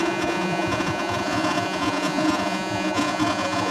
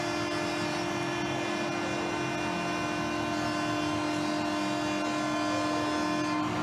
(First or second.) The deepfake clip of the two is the first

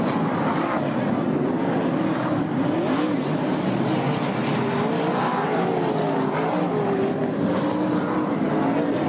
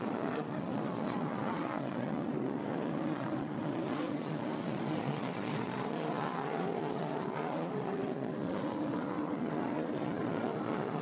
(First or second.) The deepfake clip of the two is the second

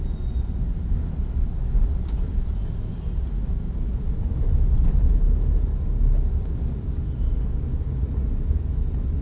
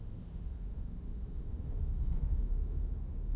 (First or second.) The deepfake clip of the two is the second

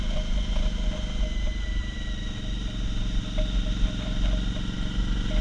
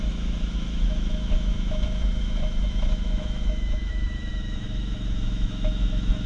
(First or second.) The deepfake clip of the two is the second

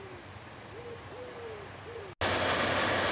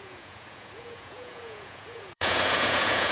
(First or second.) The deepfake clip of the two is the second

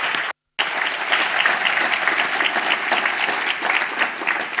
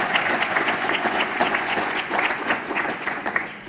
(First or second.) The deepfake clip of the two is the second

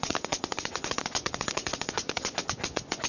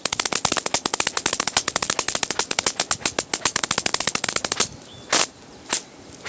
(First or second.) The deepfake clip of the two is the first